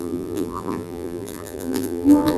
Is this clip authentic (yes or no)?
no